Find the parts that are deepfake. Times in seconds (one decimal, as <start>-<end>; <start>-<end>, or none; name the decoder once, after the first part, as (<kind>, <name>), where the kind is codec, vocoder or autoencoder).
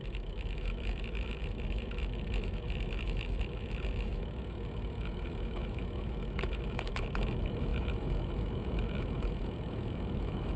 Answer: 0.0-10.6 (autoencoder, DAC-VAE)